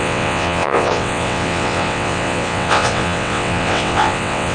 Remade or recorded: remade